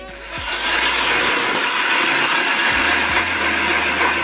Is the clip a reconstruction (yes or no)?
no